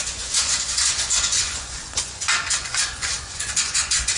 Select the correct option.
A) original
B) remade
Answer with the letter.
B